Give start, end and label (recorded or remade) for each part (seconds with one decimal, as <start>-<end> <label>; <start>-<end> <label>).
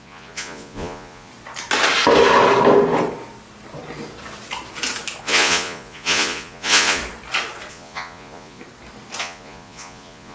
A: 0.0-1.3 remade; 1.3-5.2 recorded; 5.2-7.0 remade; 7.0-7.7 recorded; 7.7-8.6 remade; 8.6-9.2 recorded; 9.2-10.3 remade